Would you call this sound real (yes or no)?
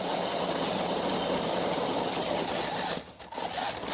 yes